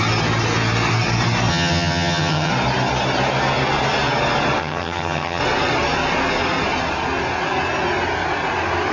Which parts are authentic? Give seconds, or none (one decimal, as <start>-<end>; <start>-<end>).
0.0-1.5; 2.5-4.6; 5.4-8.9